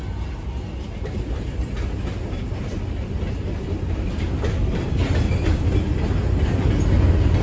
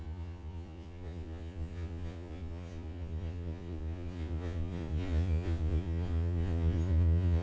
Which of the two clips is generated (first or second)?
second